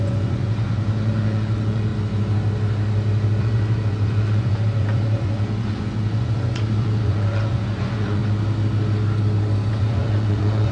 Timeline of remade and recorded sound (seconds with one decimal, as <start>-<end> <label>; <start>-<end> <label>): 0.0-1.9 remade; 1.9-3.4 recorded; 3.4-8.2 remade; 8.2-9.7 recorded; 9.7-10.7 remade